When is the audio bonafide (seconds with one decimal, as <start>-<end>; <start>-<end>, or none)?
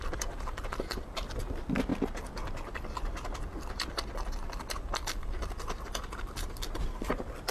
1.9-5.2